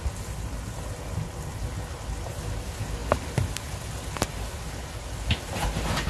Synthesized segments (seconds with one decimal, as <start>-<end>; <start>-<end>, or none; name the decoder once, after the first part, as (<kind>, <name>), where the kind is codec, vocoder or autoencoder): none